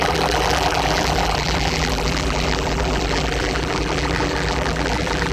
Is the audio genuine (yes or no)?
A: no